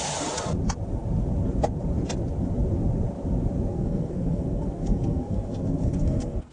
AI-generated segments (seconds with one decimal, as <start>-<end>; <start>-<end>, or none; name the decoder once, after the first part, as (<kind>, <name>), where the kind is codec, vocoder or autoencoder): 3.7-6.5 (codec, SNAC)